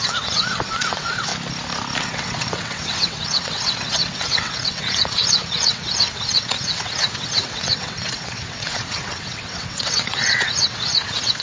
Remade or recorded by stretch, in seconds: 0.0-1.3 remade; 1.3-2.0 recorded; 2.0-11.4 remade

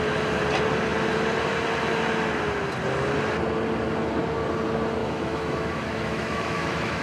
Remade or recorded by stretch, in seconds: 0.0-5.0 recorded; 5.0-7.0 remade

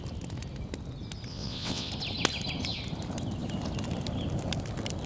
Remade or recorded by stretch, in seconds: 0.0-1.3 recorded; 1.3-1.9 remade; 1.9-5.1 recorded

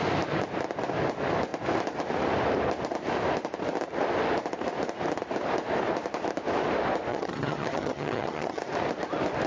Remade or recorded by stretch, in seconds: 0.0-7.1 recorded; 7.1-8.6 remade; 8.6-9.5 recorded

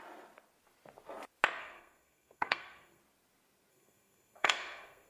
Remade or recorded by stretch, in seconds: 0.0-1.6 recorded; 1.6-3.0 remade; 3.0-3.7 recorded; 3.7-5.1 remade

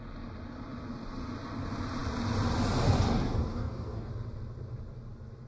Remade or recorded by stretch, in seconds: 0.0-3.5 recorded; 3.5-4.1 remade; 4.1-5.5 recorded